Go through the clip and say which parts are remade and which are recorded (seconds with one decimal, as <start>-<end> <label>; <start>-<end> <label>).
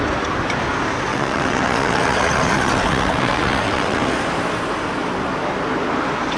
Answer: 0.0-1.1 recorded; 1.1-4.1 remade; 4.1-6.4 recorded